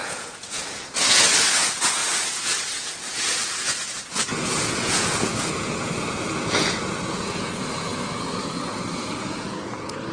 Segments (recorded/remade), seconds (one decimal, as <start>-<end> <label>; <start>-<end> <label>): 0.0-10.1 remade